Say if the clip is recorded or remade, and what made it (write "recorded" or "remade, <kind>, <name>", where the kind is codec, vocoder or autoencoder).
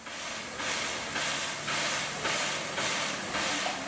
recorded